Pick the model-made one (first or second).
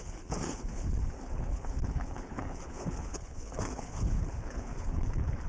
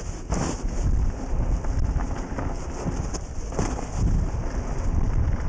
first